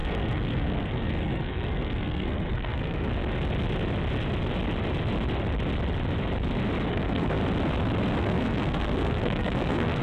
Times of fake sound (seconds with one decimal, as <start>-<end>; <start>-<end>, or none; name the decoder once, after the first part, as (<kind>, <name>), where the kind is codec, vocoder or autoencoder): 0.0-3.1 (codec, SNAC); 6.9-7.4; 8.2-10.0